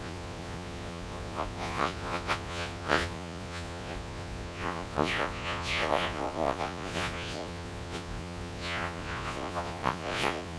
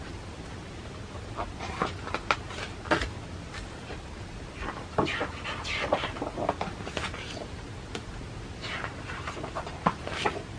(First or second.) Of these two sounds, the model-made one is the first